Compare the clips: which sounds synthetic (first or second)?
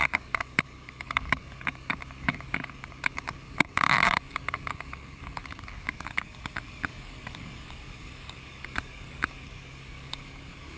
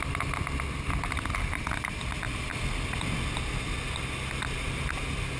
first